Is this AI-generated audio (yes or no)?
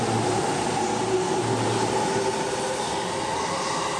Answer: no